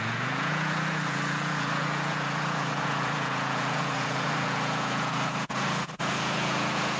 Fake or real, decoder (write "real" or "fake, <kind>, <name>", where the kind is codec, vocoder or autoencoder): fake, vocoder, Vocos